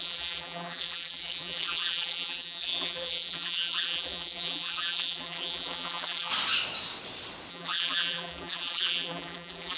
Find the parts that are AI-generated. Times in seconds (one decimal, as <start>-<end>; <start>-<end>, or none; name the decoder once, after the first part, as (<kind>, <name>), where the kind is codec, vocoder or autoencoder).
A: 0.0-6.3 (vocoder, BigVGAN v2); 7.5-9.8